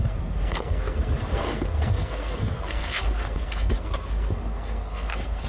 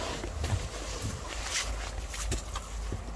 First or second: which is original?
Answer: second